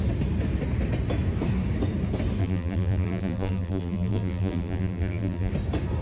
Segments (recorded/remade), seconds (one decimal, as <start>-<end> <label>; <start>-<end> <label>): 0.0-2.4 recorded; 2.4-5.5 remade; 5.5-6.0 recorded